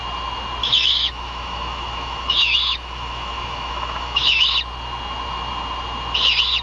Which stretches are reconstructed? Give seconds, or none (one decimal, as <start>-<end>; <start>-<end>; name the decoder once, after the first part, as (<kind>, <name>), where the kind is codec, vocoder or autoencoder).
0.6-4.5 (autoencoder, DAC-VAE)